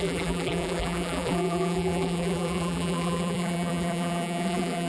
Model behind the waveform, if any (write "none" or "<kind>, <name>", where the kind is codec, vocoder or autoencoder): vocoder, BigVGAN v2